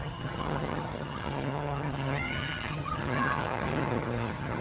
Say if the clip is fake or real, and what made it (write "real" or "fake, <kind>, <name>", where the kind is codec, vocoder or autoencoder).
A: fake, vocoder, HiFi-GAN